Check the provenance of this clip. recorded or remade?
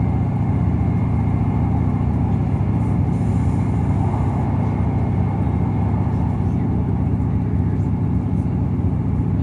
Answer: recorded